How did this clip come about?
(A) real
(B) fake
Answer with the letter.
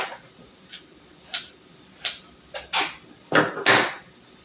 A